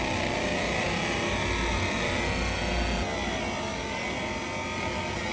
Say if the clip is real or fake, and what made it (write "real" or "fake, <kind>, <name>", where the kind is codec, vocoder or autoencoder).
real